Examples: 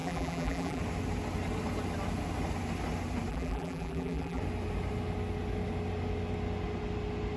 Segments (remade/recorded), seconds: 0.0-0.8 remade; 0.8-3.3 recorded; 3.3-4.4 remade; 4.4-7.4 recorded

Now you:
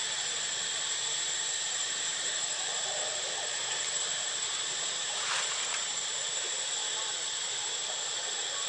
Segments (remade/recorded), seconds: 0.0-2.1 recorded; 2.1-6.6 remade; 6.6-8.7 recorded

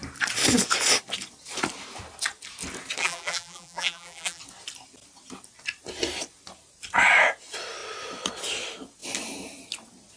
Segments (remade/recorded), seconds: 0.0-3.0 recorded; 3.0-4.4 remade; 4.4-10.2 recorded

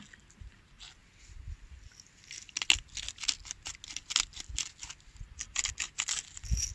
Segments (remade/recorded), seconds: 0.0-6.7 recorded